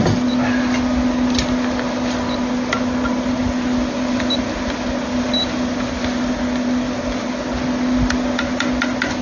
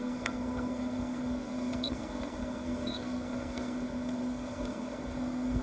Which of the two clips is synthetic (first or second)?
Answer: second